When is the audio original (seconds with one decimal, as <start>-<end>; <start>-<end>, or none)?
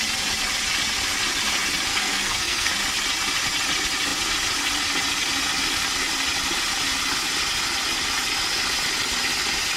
0.0-1.9; 2.7-9.8